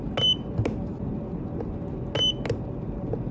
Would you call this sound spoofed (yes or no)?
no